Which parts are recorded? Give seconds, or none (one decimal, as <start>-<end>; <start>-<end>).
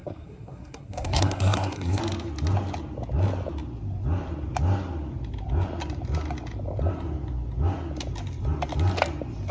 2.0-9.5